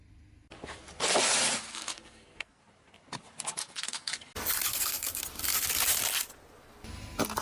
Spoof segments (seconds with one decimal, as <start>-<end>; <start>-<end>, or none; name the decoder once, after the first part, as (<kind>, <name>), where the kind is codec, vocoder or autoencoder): 1.7-2.6 (codec, SNAC); 3.6-4.2; 4.7-5.2